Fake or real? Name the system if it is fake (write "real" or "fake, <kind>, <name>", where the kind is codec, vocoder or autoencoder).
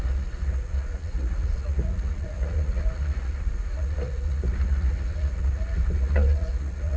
fake, vocoder, Vocos